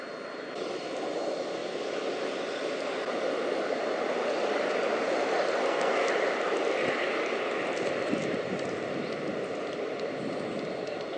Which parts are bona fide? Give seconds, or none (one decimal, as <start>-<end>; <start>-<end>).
0.0-5.6; 6.1-11.2